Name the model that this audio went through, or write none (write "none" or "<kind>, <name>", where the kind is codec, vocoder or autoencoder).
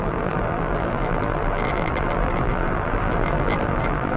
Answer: vocoder, BigVGAN v2